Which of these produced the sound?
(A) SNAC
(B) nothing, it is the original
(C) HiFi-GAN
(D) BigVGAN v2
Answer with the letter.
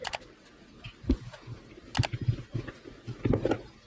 B